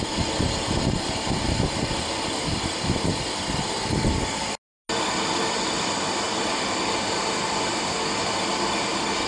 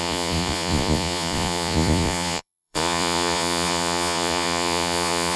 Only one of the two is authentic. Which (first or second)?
first